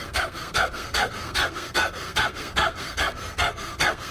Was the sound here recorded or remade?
remade